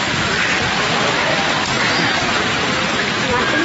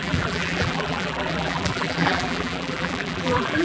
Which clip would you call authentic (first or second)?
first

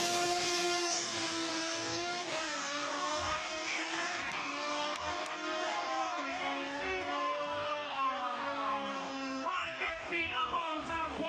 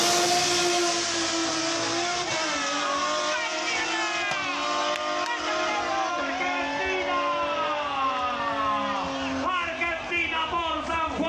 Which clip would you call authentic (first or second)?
second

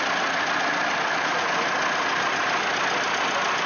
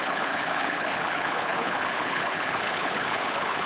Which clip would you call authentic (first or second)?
first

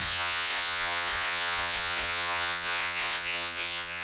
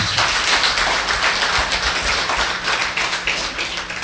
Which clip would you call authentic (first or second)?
second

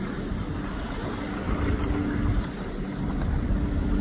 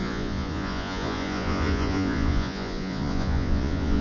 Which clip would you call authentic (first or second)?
first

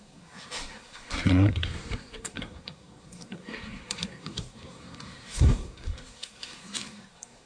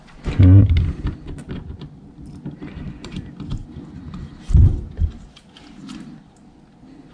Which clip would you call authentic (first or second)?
second